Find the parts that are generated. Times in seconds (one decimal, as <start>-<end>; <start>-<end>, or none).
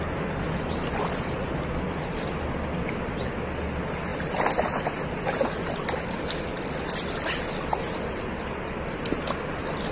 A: none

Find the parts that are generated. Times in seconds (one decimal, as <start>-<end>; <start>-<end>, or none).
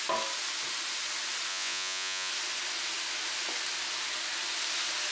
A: 1.5-2.3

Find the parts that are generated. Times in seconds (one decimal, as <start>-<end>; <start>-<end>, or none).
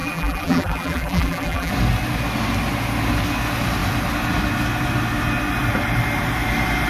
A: 0.0-1.7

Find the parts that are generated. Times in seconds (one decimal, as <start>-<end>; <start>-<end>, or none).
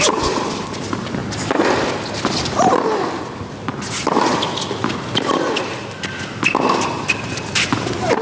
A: none